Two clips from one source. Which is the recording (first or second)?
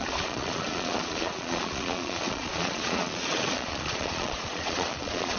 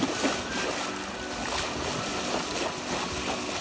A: second